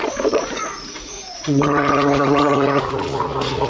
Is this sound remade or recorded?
remade